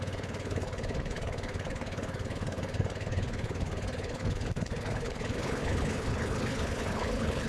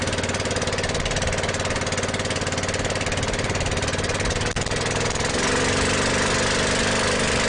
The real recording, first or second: second